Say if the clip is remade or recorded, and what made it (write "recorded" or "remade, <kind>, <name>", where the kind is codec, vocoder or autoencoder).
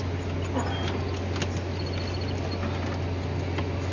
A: recorded